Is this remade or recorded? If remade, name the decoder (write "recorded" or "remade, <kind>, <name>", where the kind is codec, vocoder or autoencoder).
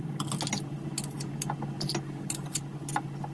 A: recorded